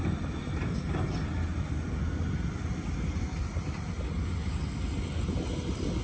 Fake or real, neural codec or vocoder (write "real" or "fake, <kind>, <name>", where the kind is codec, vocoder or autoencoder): real